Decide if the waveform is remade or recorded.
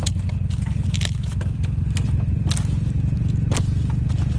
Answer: recorded